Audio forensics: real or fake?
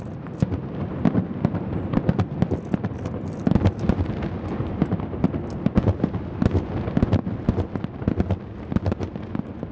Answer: real